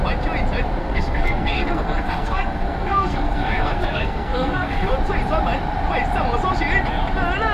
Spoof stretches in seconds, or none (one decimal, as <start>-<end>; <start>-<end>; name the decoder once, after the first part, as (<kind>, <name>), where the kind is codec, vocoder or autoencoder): 0.8-4.9 (codec, SNAC)